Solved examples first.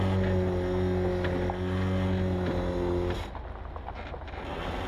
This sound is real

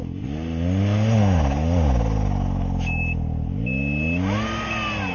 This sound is real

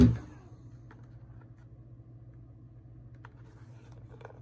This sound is real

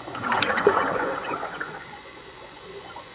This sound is fake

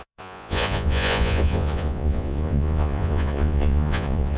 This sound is fake